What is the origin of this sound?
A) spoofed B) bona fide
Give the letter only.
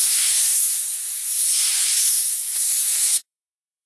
A